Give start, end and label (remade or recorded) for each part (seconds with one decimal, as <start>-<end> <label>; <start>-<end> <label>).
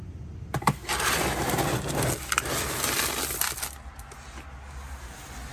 0.0-5.5 recorded